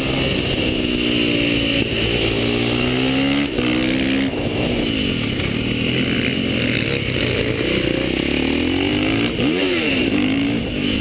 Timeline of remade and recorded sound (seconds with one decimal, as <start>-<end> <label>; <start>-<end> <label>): 0.0-8.9 recorded; 8.9-11.0 remade